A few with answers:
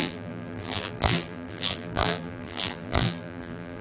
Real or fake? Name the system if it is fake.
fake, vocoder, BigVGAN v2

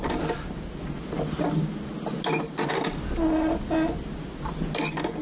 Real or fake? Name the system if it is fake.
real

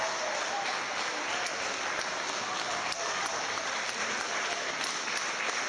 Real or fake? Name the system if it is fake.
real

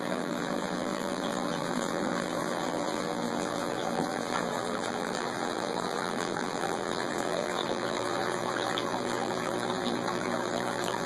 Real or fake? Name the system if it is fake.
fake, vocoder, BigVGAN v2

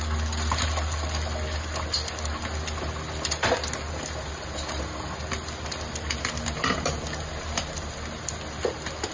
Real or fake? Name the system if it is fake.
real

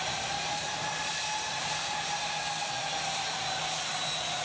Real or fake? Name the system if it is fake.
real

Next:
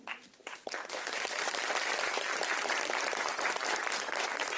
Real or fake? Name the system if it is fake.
fake, vocoder, BigVGAN v2